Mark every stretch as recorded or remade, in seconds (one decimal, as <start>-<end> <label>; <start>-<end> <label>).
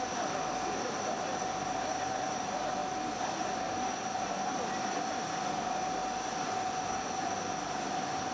0.0-8.3 recorded